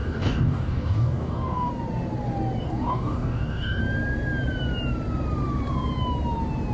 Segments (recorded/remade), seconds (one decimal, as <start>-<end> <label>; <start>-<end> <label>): 0.0-1.7 remade; 1.7-2.6 recorded; 2.6-3.8 remade; 3.8-6.7 recorded